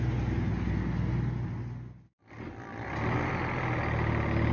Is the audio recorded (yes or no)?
yes